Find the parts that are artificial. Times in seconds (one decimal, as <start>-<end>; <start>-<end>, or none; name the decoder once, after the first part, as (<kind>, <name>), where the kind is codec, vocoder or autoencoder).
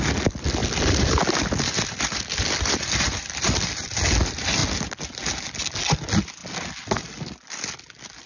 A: 0.6-3.7 (vocoder, BigVGAN v2)